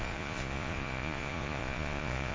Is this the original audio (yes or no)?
no